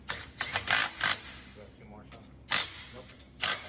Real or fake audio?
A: real